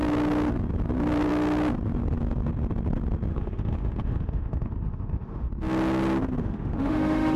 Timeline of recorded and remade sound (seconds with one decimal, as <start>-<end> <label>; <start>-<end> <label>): 0.0-3.3 recorded; 3.3-5.5 remade; 5.5-6.4 recorded; 6.4-7.4 remade